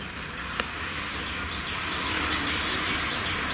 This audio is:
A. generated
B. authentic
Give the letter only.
B